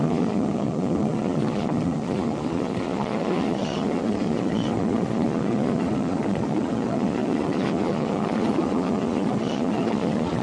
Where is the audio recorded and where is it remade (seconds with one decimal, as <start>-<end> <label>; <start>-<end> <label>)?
0.0-10.4 remade